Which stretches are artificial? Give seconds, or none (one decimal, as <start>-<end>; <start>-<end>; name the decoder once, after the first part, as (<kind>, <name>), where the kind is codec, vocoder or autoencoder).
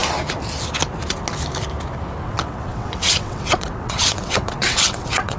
2.2-5.4 (vocoder, WaveNeXt)